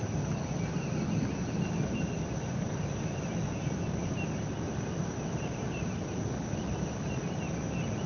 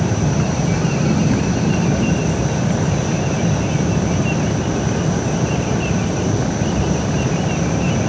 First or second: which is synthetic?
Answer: second